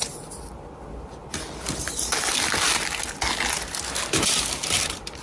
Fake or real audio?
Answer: real